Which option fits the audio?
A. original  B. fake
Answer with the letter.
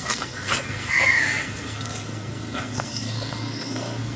B